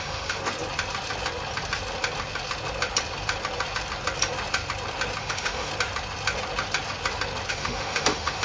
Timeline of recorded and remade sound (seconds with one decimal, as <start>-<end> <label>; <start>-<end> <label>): 0.0-0.4 remade; 0.4-5.2 recorded; 5.2-5.7 remade; 5.7-7.5 recorded; 7.5-8.4 remade

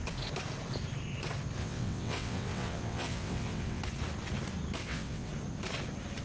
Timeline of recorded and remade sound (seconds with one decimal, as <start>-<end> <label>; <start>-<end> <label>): 0.0-1.6 recorded; 1.6-3.8 remade; 3.8-4.8 recorded; 4.8-5.3 remade; 5.3-6.2 recorded